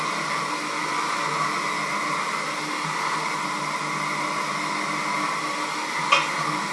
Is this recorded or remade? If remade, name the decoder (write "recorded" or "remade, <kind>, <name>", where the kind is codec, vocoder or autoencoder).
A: recorded